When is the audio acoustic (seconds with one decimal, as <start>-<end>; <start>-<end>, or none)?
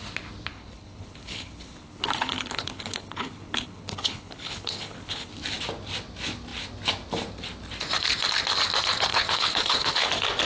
0.0-0.5; 5.3-9.1; 10.1-10.5